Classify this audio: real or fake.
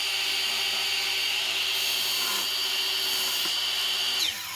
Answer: real